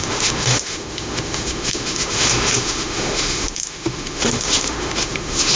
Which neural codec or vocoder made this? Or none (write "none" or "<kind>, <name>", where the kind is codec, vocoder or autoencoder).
autoencoder, DAC-VAE